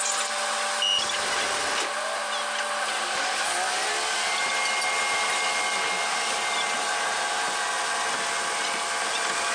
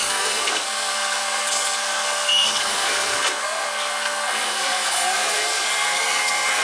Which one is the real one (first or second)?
first